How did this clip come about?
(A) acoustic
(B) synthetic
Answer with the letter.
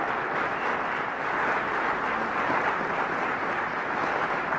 A